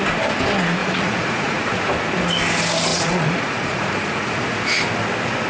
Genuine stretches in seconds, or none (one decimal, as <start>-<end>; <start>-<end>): 0.0-0.8; 1.9-2.9; 4.4-5.5